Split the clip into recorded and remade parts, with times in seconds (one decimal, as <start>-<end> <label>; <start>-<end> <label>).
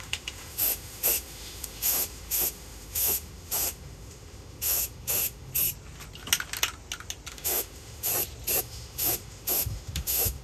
0.0-5.5 remade; 5.5-7.3 recorded; 7.3-8.1 remade; 8.1-8.6 recorded; 8.6-10.4 remade